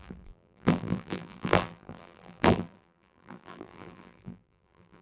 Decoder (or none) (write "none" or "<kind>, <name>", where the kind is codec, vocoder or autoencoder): vocoder, BigVGAN v2